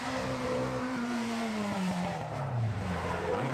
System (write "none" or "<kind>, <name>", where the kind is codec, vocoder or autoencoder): vocoder, BigVGAN v2